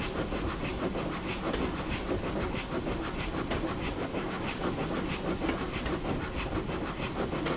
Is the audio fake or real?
real